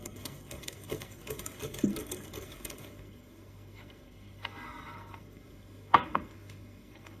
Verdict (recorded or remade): remade